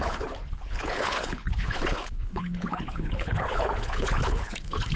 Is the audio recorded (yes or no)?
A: no